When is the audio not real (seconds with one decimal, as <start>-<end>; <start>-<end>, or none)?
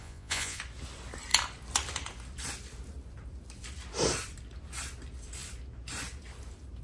0.0-0.6